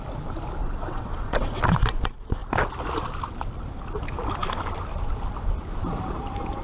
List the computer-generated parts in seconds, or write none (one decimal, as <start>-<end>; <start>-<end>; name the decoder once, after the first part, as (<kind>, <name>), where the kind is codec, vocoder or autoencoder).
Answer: 0.6-1.6 (vocoder, WaveNeXt)